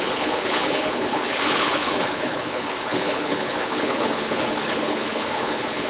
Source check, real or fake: fake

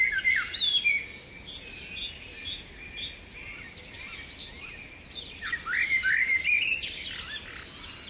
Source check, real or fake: real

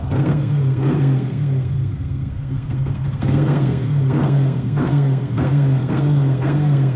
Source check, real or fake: fake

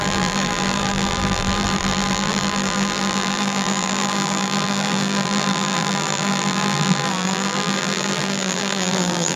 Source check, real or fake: fake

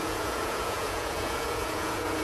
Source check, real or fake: fake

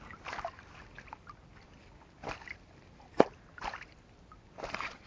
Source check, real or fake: real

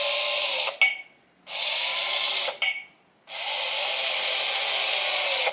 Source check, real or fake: real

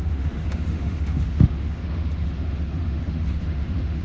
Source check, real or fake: fake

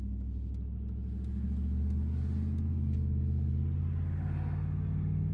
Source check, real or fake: real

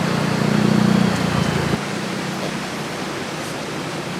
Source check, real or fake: real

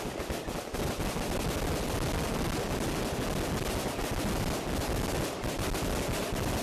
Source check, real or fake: real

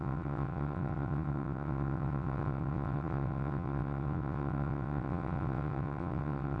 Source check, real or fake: fake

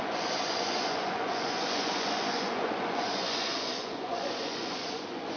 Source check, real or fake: fake